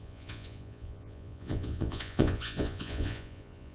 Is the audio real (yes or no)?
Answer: no